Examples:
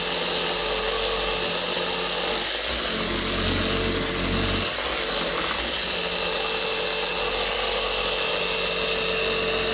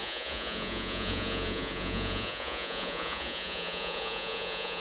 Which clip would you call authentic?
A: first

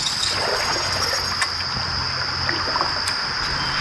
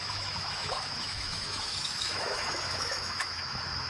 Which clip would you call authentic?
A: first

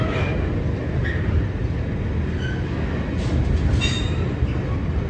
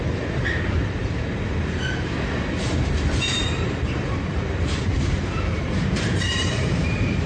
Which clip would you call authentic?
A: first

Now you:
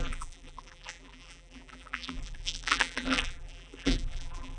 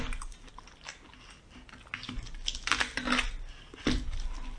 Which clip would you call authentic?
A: second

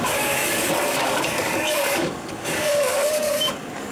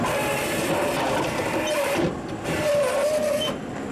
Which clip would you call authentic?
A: second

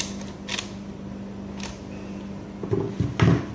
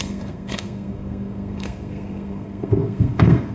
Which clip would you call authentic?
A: first